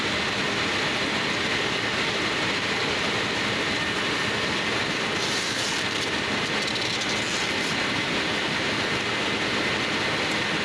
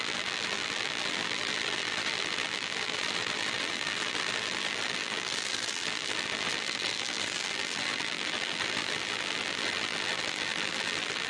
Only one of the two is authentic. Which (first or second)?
first